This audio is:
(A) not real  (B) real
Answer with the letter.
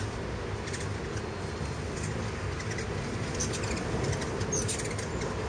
B